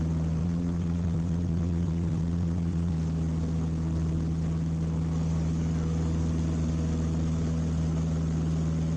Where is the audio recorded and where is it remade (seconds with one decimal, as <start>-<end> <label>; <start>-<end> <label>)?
0.0-0.4 recorded; 0.4-2.9 remade; 2.9-9.0 recorded